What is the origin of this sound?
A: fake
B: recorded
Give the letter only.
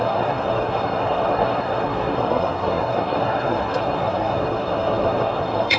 A